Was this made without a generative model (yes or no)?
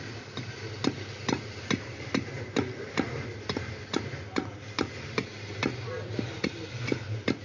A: yes